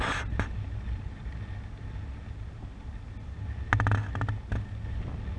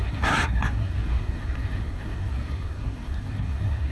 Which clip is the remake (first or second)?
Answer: second